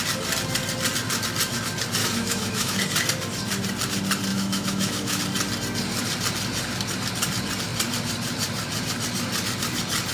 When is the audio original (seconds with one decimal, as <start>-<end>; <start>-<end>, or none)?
0.0-2.0; 2.8-4.3; 5.2-10.1